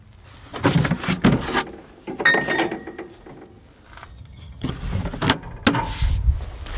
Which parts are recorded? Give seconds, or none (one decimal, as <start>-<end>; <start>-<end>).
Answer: 0.0-4.1; 4.7-6.8